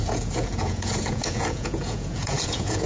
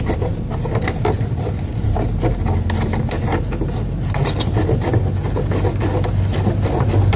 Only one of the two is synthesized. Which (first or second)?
first